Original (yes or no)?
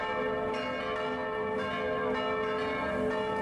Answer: yes